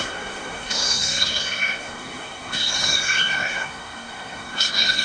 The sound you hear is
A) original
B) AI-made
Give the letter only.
B